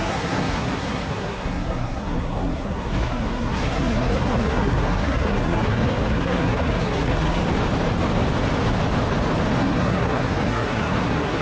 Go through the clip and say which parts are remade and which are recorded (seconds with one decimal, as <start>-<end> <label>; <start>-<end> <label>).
0.0-7.4 remade; 7.4-9.6 recorded; 9.6-11.4 remade